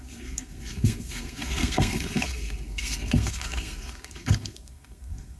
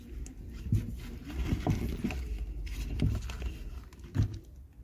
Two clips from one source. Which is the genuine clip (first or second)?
second